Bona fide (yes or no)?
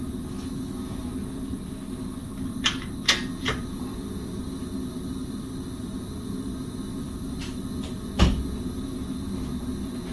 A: yes